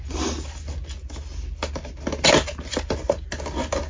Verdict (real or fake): real